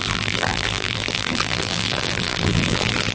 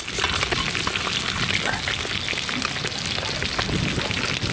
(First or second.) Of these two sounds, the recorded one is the second